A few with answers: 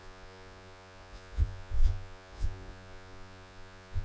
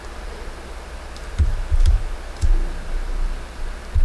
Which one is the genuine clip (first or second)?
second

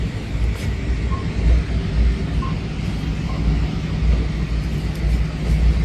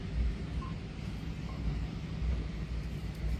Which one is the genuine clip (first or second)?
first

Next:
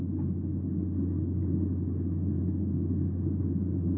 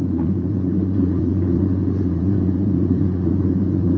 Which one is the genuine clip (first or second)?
first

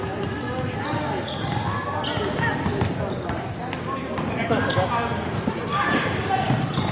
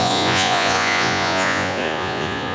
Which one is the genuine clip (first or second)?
first